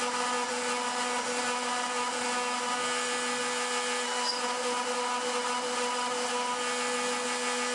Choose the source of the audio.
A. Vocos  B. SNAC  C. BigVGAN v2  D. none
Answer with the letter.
D